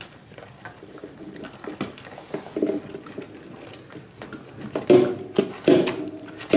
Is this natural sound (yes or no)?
yes